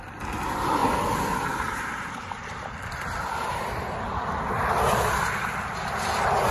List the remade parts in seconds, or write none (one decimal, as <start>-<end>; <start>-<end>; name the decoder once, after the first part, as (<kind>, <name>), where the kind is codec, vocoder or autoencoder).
0.0-6.5 (vocoder, BigVGAN v2)